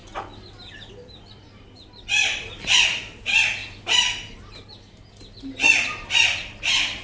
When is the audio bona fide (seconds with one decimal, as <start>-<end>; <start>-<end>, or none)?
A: 0.0-0.9; 3.6-5.1